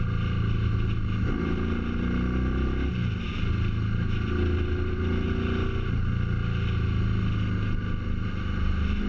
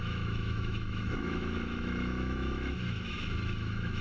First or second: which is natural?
first